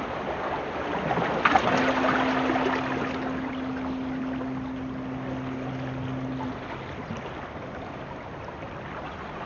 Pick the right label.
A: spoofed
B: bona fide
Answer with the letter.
B